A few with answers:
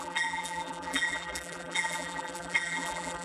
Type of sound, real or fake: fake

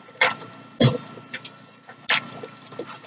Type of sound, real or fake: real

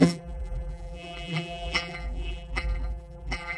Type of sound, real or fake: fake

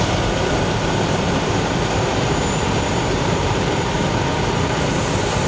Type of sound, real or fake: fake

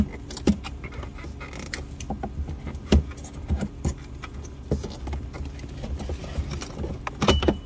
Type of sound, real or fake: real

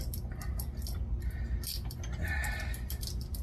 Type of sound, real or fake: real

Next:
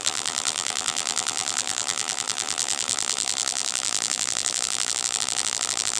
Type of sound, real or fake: fake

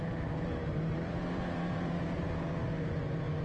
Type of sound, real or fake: fake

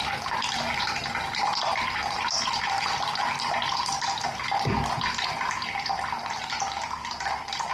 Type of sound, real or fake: real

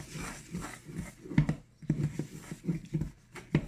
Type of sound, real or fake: real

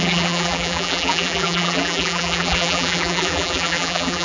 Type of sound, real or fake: fake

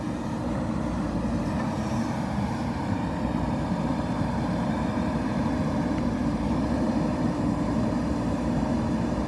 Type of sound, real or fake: fake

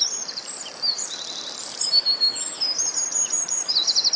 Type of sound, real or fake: fake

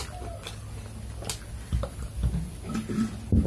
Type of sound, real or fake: real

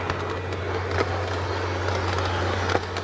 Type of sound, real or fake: real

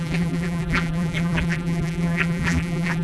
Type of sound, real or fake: fake